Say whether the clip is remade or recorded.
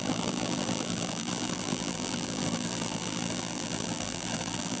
remade